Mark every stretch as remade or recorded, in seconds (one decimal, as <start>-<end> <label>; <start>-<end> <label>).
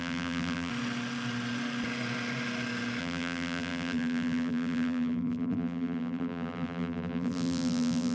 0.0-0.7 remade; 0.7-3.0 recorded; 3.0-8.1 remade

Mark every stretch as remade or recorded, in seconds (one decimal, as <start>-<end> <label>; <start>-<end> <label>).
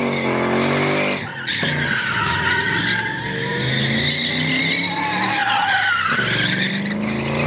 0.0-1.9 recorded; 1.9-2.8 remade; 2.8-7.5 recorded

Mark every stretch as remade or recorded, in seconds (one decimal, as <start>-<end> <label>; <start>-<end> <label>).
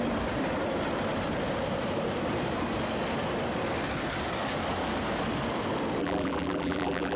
0.0-6.0 recorded; 6.0-7.2 remade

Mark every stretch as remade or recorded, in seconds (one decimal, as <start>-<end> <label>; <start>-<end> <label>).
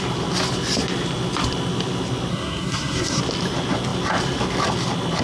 0.0-2.3 recorded; 2.3-3.2 remade; 3.2-5.2 recorded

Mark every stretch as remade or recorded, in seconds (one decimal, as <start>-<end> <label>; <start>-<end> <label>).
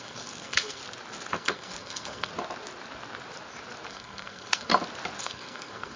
0.0-0.8 remade; 0.8-1.3 recorded; 1.3-2.3 remade; 2.3-3.9 recorded; 3.9-4.7 remade; 4.7-5.2 recorded; 5.2-6.0 remade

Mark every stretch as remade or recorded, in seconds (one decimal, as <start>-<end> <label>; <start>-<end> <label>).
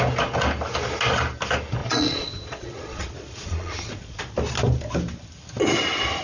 0.0-1.8 recorded; 1.8-4.2 remade; 4.2-6.2 recorded